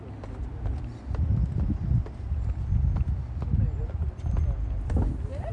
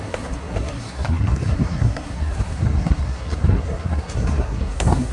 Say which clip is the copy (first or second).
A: second